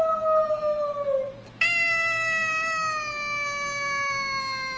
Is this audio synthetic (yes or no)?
no